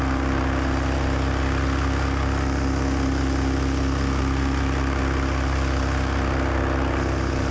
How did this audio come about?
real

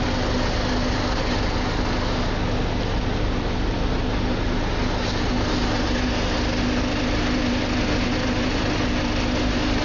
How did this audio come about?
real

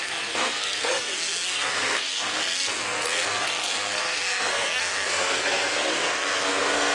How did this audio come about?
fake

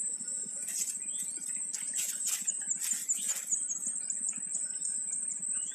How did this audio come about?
real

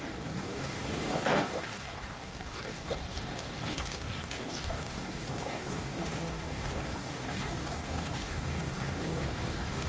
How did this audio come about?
fake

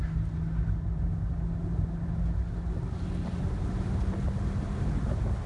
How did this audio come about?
real